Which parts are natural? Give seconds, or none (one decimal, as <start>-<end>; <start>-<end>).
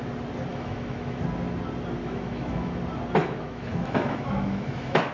0.0-0.5; 1.2-2.0; 2.8-3.2